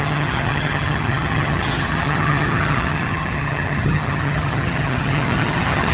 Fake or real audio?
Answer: fake